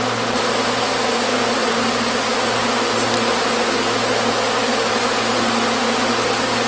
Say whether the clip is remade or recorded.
recorded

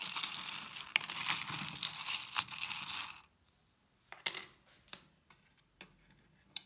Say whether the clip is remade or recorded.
remade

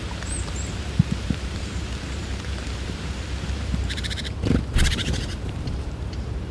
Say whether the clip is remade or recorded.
remade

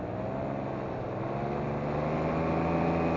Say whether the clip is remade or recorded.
recorded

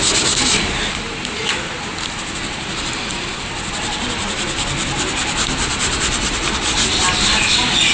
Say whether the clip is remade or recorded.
recorded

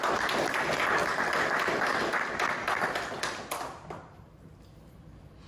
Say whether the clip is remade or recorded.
recorded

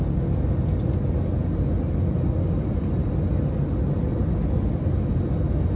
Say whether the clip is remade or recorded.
recorded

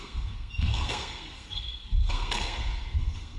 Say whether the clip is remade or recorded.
remade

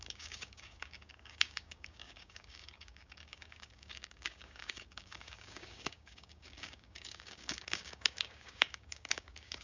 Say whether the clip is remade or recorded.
remade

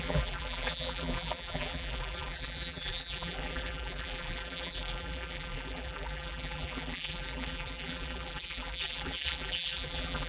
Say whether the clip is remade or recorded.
remade